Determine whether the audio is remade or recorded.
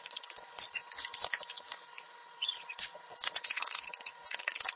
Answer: remade